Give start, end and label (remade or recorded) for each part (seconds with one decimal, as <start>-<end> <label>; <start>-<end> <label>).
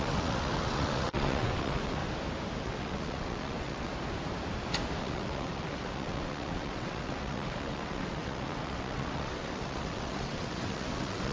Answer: 0.0-2.0 remade; 2.0-2.6 recorded; 2.6-3.9 remade; 3.9-5.0 recorded; 5.0-11.3 remade